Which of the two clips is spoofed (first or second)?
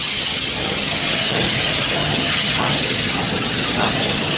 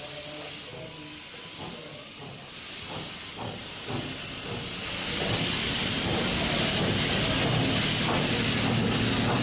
first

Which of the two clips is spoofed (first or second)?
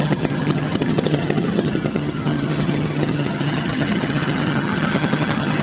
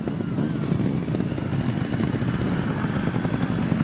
first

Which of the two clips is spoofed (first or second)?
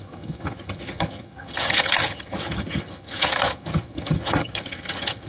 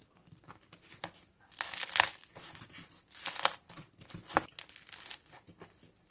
first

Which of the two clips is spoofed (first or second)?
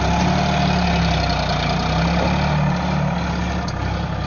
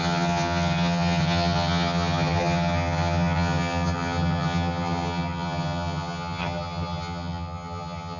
second